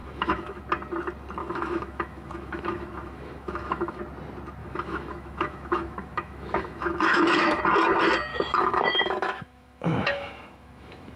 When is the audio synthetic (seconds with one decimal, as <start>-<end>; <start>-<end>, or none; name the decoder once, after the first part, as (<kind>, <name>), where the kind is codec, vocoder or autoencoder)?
0.0-0.6 (autoencoder, DAC-VAE); 1.4-4.0; 4.6-7.6; 8.3-11.2